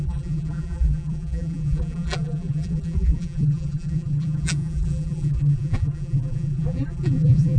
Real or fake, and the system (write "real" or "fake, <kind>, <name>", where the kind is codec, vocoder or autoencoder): fake, vocoder, BigVGAN v2